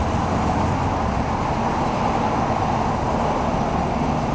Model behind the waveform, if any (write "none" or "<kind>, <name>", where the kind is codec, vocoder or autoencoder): vocoder, BigVGAN v2